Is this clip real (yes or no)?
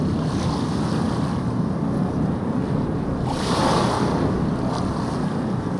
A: yes